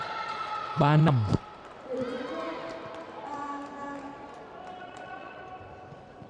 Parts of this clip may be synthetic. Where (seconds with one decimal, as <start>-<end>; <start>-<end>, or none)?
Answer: 0.0-1.0; 4.8-5.4